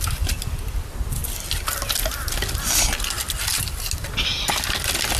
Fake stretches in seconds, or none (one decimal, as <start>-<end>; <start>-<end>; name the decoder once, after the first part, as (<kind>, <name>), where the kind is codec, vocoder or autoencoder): none